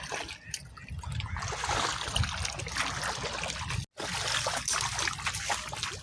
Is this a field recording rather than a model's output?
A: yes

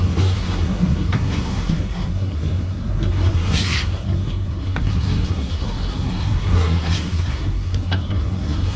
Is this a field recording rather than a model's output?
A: no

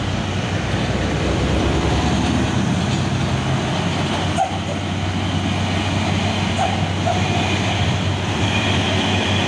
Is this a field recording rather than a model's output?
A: yes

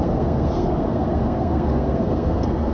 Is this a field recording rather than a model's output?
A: no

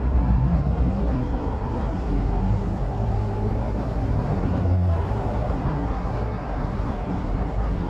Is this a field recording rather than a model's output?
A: no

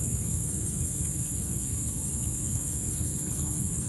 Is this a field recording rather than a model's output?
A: no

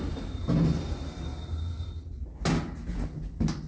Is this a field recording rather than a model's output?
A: yes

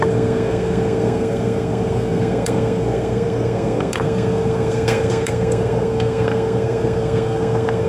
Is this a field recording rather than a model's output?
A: no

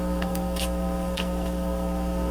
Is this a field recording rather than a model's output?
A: no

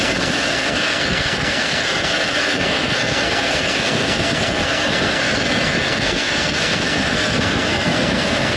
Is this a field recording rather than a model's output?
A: no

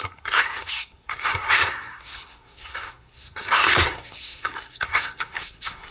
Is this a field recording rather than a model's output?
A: no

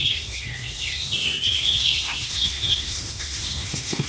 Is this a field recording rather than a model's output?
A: no